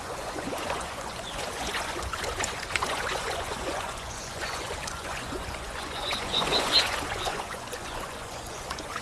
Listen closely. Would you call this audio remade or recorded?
remade